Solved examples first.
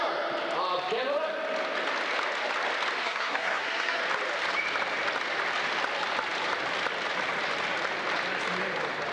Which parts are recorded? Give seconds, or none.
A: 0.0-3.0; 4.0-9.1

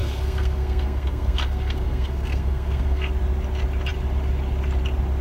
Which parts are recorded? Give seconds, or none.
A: 3.1-5.2

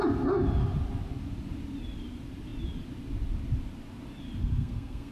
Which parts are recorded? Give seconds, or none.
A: 0.0-4.4

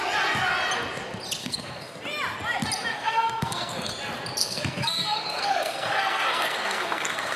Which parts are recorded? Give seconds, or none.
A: 0.0-1.4; 2.0-2.9; 3.9-4.4

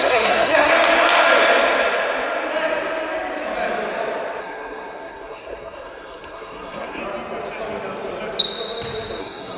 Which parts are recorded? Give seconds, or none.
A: 0.7-4.4; 7.0-9.2

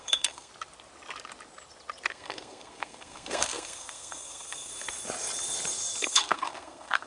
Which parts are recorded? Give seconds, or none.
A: 0.5-2.1; 4.7-6.0